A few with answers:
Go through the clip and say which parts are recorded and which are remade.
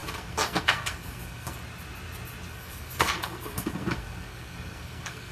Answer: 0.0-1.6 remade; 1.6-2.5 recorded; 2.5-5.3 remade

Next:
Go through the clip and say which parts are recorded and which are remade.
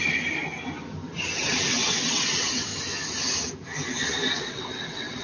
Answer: 0.0-1.4 recorded; 1.4-2.7 remade; 2.7-4.4 recorded; 4.4-5.2 remade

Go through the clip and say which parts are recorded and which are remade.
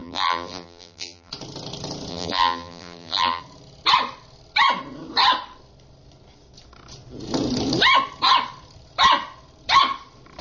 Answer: 0.0-1.3 remade; 1.3-2.1 recorded; 2.1-3.4 remade; 3.4-10.4 recorded